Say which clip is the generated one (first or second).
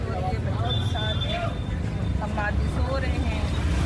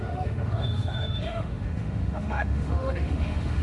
second